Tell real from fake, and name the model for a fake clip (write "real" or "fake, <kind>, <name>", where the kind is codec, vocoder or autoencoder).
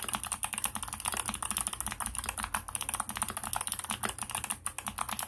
real